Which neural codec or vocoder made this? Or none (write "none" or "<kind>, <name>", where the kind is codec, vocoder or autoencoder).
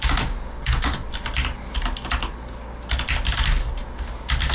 none